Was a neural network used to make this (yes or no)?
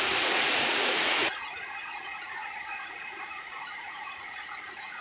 yes